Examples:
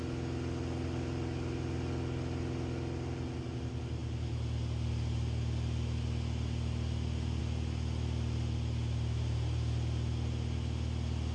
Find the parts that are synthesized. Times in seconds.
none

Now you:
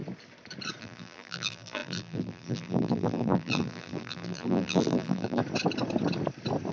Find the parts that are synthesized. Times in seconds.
0.8-5.4 (vocoder, BigVGAN v2)

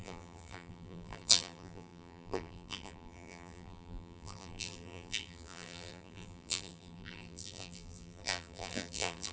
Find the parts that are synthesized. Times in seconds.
0.0-9.3 (vocoder, BigVGAN v2)

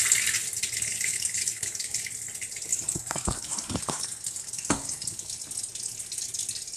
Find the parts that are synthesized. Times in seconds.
0.9-2.1 (codec, DAC); 2.7-5.3

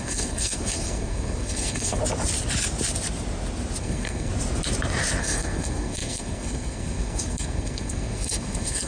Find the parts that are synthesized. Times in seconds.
0.0-2.0 (codec, SNAC); 3.8-4.3; 5.2-8.9

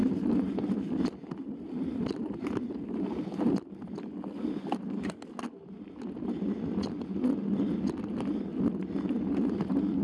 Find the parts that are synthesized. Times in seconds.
none

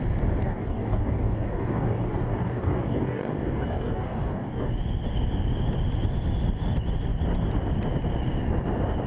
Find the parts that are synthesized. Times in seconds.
0.4-4.7 (codec, DAC)